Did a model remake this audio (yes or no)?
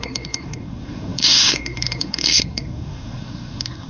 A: yes